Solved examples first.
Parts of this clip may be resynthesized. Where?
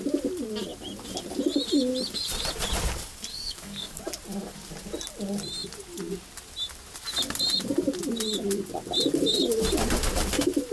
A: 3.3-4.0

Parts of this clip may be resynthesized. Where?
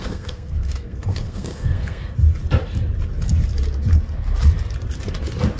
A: 0.0-2.0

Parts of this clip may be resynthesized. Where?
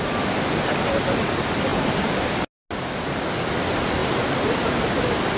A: 1.7-2.3; 4.0-5.4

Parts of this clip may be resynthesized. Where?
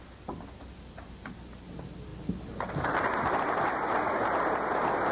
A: none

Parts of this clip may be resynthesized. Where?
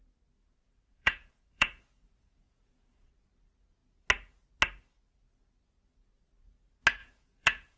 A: 0.4-3.1; 7.0-7.8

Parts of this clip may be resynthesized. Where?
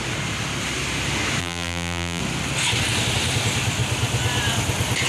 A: 1.4-2.2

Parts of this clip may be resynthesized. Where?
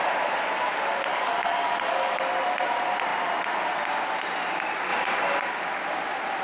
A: 1.1-2.2